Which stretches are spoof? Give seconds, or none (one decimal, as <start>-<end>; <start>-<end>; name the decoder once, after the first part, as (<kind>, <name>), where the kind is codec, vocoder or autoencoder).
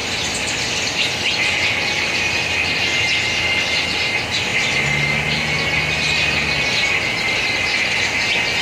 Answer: none